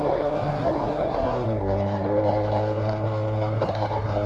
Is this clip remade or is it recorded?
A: remade